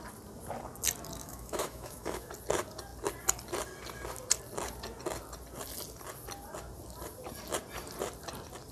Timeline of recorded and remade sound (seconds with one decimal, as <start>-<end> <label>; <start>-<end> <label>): 0.0-1.2 recorded; 1.2-2.3 remade; 2.3-8.7 recorded